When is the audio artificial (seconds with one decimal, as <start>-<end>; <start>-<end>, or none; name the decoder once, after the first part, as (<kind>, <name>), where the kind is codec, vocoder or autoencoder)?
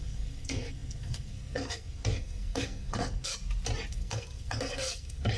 0.0-3.3 (codec, SNAC); 3.9-5.4